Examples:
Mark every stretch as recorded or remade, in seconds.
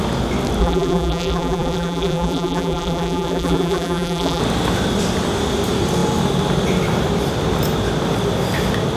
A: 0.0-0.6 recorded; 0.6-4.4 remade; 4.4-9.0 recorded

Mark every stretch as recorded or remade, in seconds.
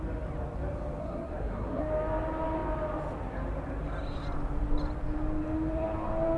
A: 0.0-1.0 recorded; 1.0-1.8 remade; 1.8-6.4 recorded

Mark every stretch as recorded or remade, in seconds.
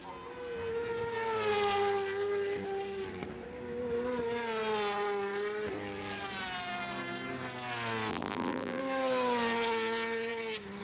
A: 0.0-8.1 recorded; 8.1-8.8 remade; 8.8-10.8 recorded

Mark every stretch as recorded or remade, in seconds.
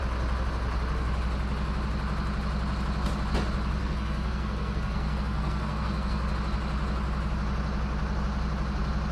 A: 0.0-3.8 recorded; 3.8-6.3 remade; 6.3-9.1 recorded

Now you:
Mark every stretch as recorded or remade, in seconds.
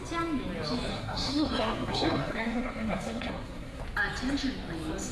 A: 0.0-0.9 recorded; 0.9-3.8 remade; 3.8-5.1 recorded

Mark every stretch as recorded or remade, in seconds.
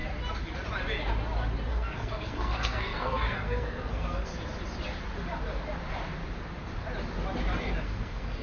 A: 0.0-1.7 recorded; 1.7-4.3 remade; 4.3-7.8 recorded; 7.8-8.4 remade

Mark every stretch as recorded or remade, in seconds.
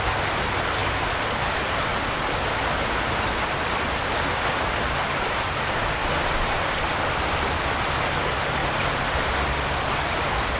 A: 0.0-0.8 recorded; 0.8-1.3 remade; 1.3-6.0 recorded; 6.0-8.0 remade; 8.0-8.6 recorded; 8.6-10.1 remade; 10.1-10.6 recorded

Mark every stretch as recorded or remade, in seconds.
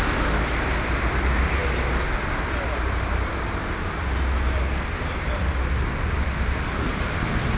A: 0.0-7.6 recorded